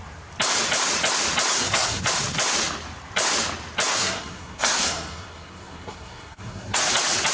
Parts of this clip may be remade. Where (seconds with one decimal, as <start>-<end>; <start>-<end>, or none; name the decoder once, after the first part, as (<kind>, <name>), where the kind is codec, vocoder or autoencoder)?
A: 1.5-2.0 (codec, SNAC); 3.9-6.8